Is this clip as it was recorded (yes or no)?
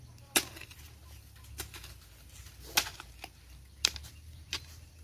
yes